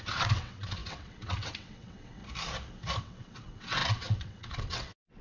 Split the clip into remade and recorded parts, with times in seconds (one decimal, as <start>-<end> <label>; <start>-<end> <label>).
0.0-2.2 remade; 2.2-3.0 recorded; 3.0-5.2 remade

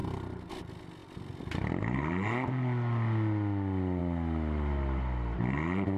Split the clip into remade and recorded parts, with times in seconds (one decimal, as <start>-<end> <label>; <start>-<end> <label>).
0.0-1.0 recorded; 1.0-2.1 remade; 2.1-6.0 recorded

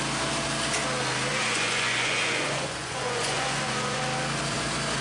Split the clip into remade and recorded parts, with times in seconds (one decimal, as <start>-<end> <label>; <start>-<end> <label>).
0.0-1.3 recorded; 1.3-4.0 remade; 4.0-5.0 recorded

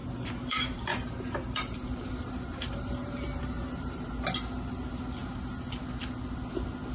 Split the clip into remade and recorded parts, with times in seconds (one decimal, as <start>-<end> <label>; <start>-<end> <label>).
0.0-4.1 remade; 4.1-6.9 recorded

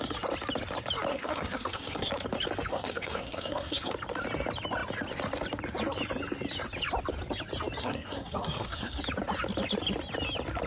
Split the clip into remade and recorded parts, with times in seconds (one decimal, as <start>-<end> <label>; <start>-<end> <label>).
0.0-1.1 recorded; 1.1-2.1 remade; 2.1-2.7 recorded; 2.7-3.9 remade; 3.9-7.8 recorded; 7.8-9.0 remade; 9.0-10.7 recorded

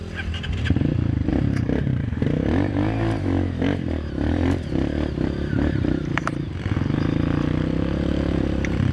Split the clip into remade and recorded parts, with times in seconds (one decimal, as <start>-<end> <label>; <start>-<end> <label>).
0.0-1.3 recorded; 1.3-6.4 remade; 6.4-8.9 recorded

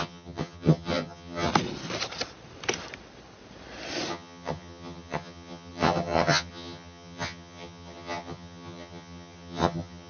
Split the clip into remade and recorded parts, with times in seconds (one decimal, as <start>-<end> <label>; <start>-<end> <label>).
0.0-1.5 remade; 1.5-4.1 recorded; 4.1-10.1 remade